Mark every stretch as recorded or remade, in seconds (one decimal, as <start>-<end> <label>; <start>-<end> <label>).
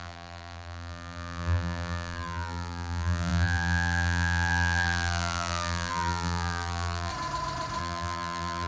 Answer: 0.0-7.1 remade; 7.1-7.8 recorded; 7.8-8.7 remade